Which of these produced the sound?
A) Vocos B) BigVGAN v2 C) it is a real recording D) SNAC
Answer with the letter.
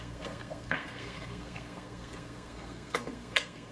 D